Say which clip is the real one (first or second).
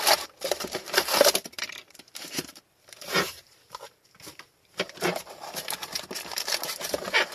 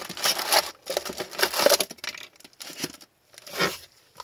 second